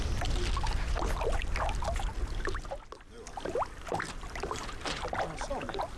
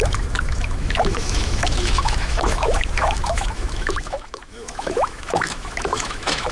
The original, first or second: first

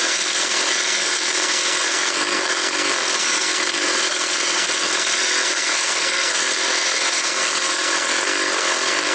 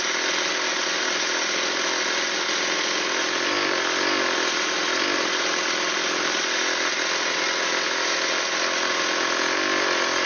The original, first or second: second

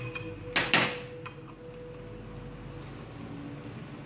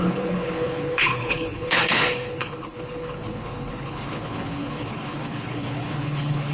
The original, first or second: first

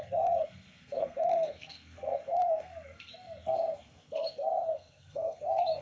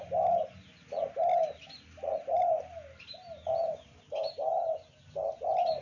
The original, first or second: second